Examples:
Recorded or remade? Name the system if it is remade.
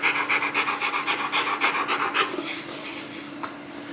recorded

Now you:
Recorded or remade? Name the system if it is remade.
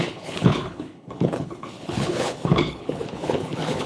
remade, codec, HILCodec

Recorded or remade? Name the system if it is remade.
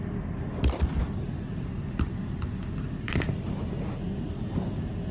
recorded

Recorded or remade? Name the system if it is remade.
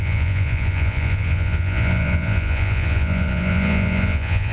remade, vocoder, Vocos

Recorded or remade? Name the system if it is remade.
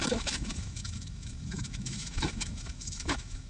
remade, autoencoder, DAC-VAE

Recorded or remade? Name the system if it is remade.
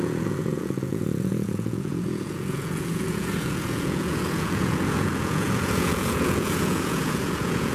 remade, vocoder, Vocos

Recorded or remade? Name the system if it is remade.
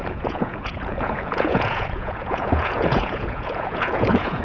remade, vocoder, Vocos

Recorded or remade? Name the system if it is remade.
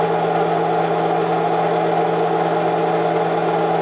recorded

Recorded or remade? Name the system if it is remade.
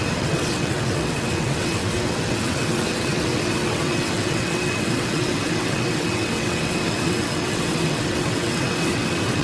remade, vocoder, WaveNeXt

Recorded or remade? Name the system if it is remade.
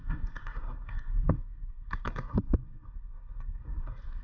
remade, codec, SNAC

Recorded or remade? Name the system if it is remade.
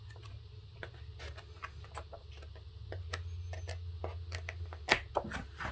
recorded